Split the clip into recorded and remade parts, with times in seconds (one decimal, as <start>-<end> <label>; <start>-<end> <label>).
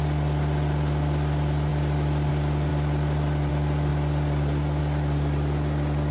0.0-6.1 recorded